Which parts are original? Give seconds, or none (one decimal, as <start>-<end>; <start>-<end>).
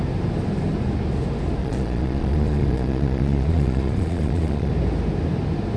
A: 0.0-1.6; 4.7-5.8